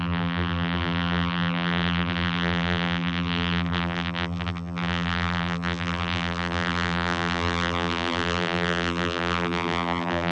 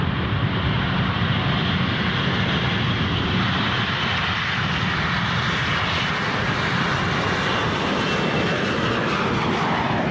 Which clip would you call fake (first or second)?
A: first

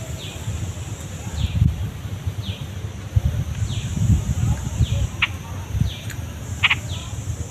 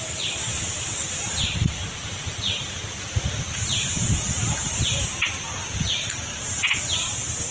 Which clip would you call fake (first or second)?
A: second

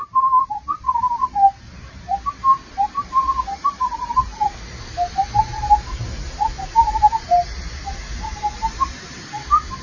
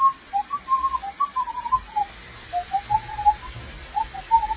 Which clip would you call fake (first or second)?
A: first